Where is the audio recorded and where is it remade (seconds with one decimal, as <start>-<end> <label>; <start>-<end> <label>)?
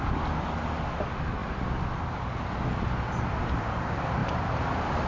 0.0-4.2 recorded; 4.2-5.1 remade